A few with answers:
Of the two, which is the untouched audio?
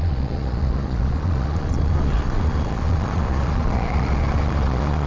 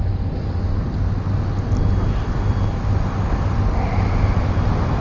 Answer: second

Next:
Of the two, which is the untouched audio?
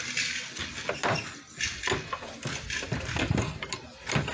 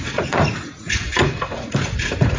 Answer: first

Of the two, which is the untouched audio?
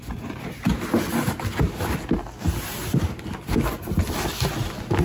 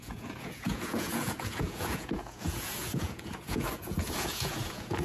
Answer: first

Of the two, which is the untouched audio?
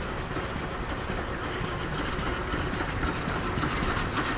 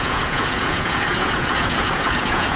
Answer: first